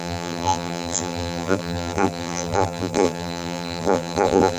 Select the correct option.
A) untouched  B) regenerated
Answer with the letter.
B